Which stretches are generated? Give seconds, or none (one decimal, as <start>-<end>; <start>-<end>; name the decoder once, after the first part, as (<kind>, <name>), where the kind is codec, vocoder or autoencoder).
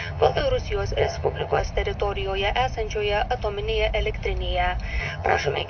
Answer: 0.0-0.4 (vocoder, HiFi-GAN); 1.0-1.6; 5.0-5.7